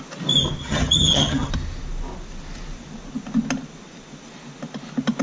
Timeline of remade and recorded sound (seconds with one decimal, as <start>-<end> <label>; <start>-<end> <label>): 0.0-0.6 recorded; 0.6-1.5 remade; 1.5-5.2 recorded